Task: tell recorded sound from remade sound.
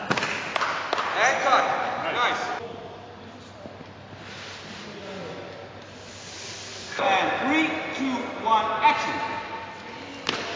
recorded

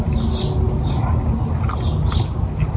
recorded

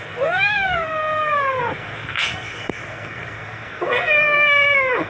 remade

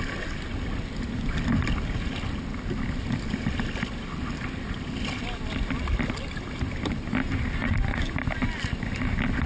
recorded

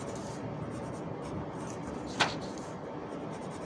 recorded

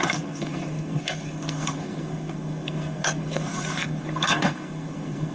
remade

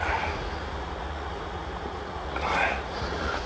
remade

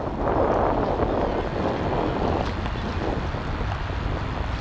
recorded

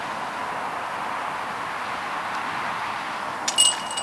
recorded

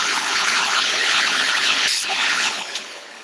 remade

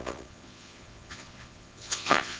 remade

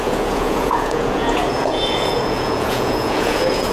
remade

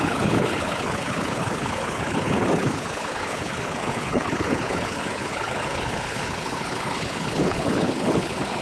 remade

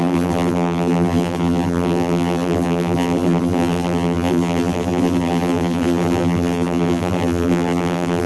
remade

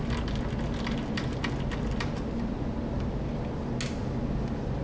recorded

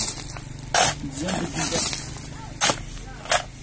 recorded